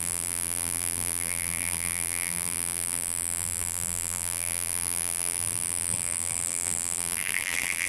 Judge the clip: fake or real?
fake